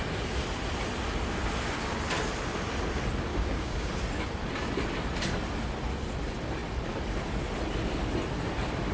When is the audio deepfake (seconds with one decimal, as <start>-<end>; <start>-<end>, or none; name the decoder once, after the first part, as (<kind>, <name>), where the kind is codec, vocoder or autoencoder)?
3.3-3.9 (codec, DAC)

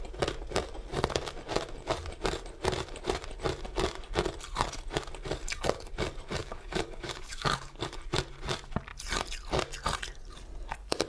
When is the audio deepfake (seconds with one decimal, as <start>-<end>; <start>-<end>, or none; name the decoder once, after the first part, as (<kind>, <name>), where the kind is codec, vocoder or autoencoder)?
6.4-7.8 (codec, DAC)

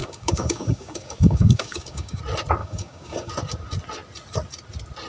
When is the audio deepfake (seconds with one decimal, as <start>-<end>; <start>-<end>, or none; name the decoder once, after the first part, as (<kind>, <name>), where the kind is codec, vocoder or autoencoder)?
0.0-2.2 (codec, DAC); 2.6-3.3

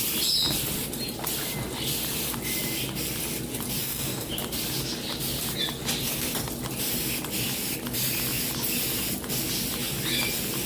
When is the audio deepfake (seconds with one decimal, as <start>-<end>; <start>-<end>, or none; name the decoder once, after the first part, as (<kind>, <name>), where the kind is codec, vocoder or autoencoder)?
3.8-4.3 (codec, DAC)

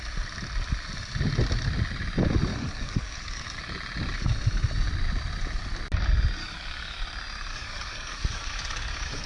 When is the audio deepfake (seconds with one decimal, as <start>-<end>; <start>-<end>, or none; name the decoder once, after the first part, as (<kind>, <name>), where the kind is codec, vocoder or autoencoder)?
2.5-3.4 (codec, DAC); 6.4-7.0; 7.5-9.3

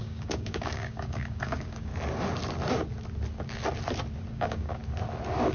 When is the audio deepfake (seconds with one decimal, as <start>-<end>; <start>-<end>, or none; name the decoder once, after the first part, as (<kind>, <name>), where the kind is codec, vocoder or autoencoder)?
0.0-1.9 (codec, DAC); 4.3-4.8

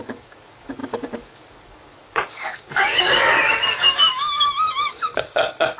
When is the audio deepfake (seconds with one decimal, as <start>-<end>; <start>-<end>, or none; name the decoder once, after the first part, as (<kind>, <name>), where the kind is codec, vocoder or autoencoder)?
0.0-5.8 (codec, DAC)